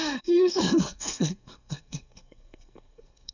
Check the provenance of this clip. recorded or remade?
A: remade